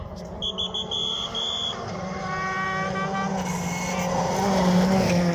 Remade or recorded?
recorded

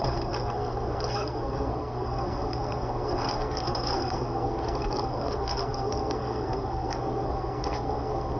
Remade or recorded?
remade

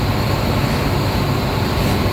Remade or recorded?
recorded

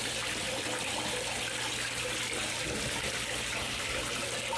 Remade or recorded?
recorded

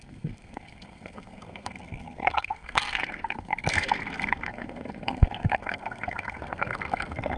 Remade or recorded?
remade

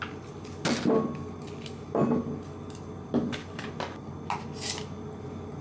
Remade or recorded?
recorded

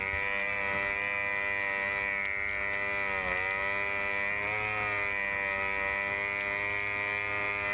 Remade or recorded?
recorded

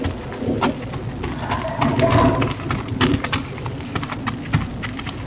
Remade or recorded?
recorded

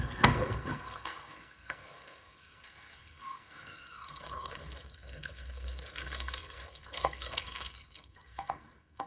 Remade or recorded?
remade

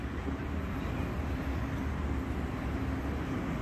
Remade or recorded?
recorded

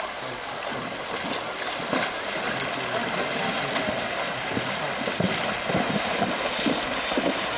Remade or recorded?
recorded